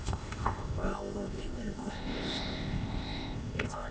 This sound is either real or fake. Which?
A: fake